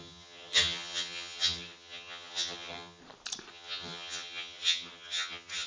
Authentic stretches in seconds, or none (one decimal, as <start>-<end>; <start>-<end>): 3.0-3.5